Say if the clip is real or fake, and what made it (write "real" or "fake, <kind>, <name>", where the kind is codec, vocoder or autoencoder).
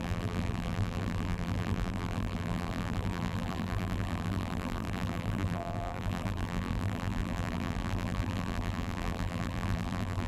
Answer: fake, vocoder, BigVGAN v2